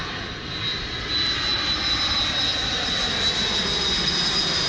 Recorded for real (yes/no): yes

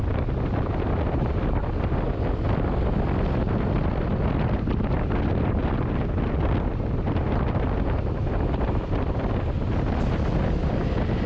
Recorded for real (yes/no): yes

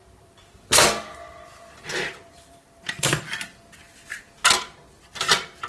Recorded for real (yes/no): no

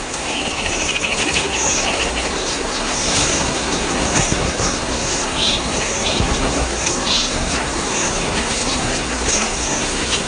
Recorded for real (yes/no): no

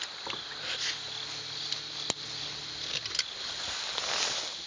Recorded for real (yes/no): yes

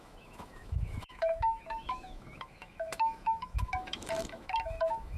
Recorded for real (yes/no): no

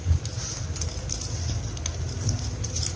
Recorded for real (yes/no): yes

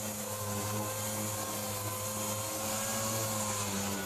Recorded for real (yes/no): yes